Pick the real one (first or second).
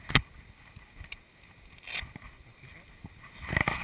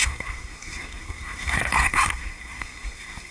first